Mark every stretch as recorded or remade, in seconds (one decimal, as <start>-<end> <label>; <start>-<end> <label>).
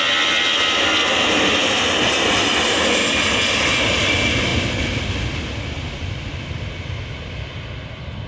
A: 0.0-8.3 recorded